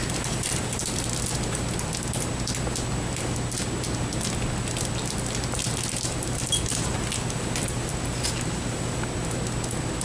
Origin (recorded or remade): recorded